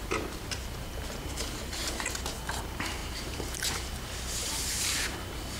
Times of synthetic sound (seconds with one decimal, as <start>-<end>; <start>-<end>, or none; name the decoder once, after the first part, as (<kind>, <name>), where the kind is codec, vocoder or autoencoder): 0.0-1.8 (vocoder, BigVGAN v2); 2.6-5.6

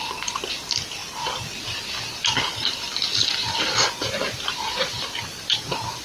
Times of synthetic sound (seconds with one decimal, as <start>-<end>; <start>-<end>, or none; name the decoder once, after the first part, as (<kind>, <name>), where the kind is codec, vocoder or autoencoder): 0.0-6.0 (vocoder, BigVGAN v2)

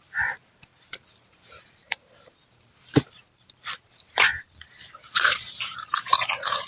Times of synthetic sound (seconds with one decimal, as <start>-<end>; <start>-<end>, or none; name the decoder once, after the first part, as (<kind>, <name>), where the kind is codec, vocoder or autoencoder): 0.0-6.7 (vocoder, BigVGAN v2)

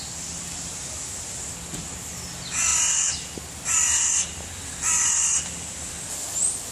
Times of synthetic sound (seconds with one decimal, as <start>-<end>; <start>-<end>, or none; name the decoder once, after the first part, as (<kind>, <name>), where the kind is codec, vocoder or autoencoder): none

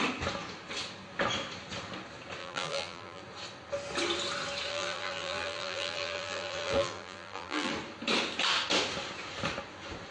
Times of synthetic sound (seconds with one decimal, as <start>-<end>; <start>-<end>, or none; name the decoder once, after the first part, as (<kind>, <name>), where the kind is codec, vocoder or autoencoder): 2.4-3.2 (vocoder, BigVGAN v2); 4.7-7.7

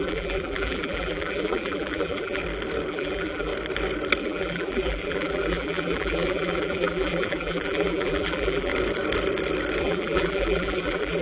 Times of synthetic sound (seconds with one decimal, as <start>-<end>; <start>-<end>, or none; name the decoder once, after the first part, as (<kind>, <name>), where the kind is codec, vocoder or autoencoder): 0.0-2.4 (vocoder, BigVGAN v2); 2.9-3.5; 4.2-8.7; 9.8-11.2